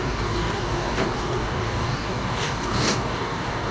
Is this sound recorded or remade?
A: remade